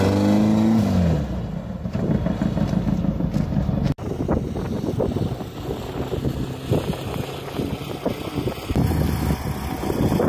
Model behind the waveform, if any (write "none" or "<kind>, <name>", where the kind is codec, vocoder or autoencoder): none